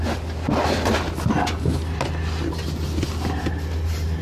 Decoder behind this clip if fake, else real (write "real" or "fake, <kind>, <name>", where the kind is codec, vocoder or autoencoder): real